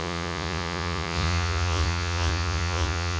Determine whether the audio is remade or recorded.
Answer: remade